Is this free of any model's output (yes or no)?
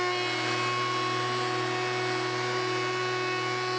yes